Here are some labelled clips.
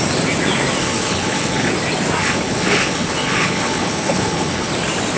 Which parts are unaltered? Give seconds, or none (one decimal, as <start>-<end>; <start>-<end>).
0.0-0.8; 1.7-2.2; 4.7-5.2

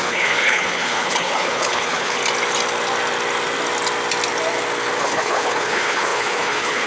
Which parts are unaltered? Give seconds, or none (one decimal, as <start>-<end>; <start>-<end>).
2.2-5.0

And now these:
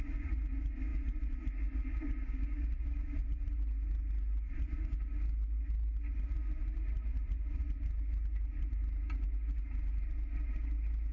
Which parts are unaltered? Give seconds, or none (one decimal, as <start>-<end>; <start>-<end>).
0.0-11.1